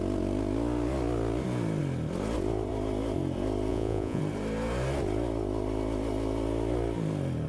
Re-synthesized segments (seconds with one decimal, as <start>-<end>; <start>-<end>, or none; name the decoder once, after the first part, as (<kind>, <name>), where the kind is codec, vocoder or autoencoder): 3.7-4.2 (vocoder, Vocos)